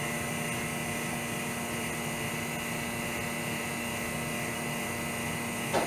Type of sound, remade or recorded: recorded